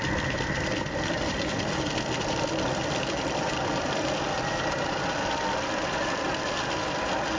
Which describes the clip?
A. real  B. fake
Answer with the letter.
B